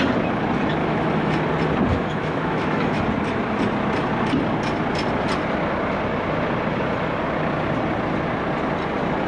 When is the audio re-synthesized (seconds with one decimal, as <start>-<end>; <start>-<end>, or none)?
0.8-1.4; 1.9-3.0